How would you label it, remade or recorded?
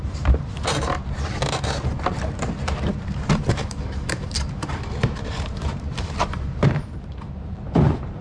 remade